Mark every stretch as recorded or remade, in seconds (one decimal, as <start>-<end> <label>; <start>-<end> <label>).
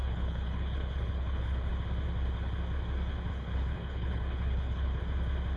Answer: 0.0-1.7 remade; 1.7-3.3 recorded; 3.3-5.0 remade; 5.0-5.6 recorded